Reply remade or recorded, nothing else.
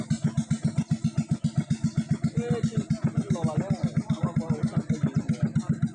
recorded